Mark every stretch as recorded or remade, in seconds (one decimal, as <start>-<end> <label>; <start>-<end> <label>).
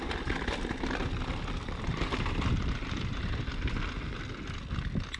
0.0-1.9 recorded; 1.9-3.4 remade; 3.4-5.2 recorded